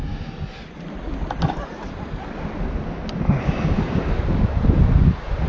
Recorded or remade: recorded